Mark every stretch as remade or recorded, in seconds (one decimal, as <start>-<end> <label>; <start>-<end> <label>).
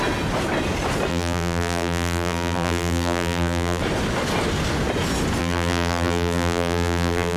0.0-1.1 recorded; 1.1-3.8 remade; 3.8-5.4 recorded; 5.4-7.4 remade